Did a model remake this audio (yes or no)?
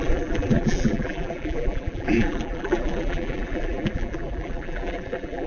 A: yes